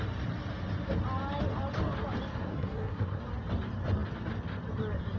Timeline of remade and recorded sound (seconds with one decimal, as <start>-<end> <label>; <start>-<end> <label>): 0.0-2.4 recorded; 2.4-3.2 remade; 3.2-5.2 recorded